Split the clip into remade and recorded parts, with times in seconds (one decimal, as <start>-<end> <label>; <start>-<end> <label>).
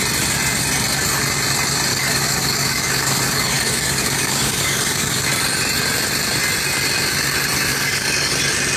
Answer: 0.0-1.9 recorded; 1.9-5.3 remade; 5.3-7.7 recorded; 7.7-8.3 remade; 8.3-8.8 recorded